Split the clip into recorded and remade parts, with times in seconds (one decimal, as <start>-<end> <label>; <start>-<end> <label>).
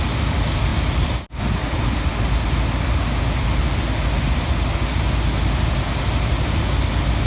0.0-7.3 recorded